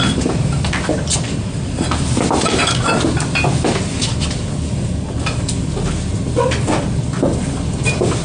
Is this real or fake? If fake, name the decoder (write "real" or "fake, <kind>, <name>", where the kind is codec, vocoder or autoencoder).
real